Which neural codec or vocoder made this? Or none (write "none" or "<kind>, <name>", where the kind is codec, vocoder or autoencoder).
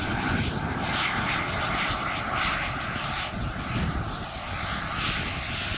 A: none